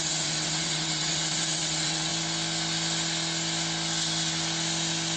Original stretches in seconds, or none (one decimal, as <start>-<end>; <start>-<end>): 2.1-5.2